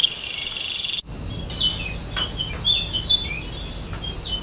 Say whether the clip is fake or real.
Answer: real